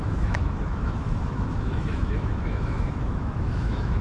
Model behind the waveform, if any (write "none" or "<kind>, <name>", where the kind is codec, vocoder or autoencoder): autoencoder, DAC-VAE